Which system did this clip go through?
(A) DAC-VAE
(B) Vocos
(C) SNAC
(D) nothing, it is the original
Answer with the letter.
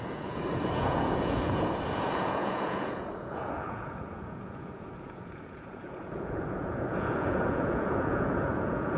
B